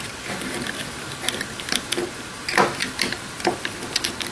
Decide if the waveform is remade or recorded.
recorded